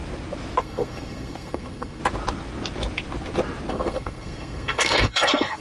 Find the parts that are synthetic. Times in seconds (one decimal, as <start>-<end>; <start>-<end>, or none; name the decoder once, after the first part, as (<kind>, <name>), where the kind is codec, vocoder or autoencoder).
0.6-2.0 (codec, SNAC); 3.7-5.6